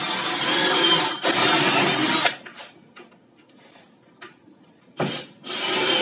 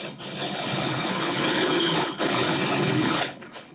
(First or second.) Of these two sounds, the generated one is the second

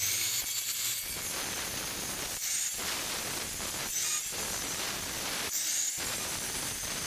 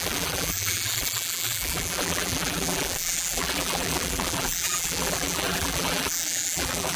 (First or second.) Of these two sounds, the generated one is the second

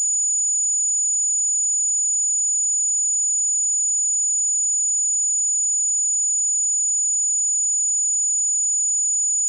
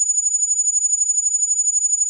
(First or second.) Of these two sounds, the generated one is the second